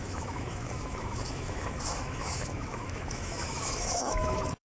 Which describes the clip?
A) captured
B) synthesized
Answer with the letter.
B